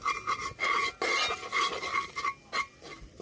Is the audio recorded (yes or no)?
yes